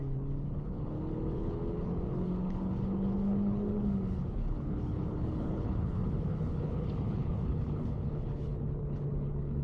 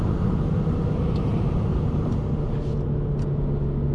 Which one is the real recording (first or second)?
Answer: second